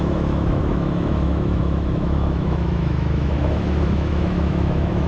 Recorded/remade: remade